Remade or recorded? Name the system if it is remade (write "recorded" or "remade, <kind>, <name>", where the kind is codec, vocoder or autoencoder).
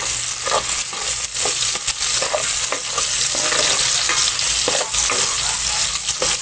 recorded